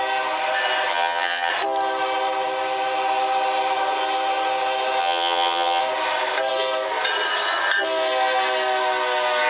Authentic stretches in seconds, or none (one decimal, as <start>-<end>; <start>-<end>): 0.0-0.9; 1.5-5.0; 5.8-9.5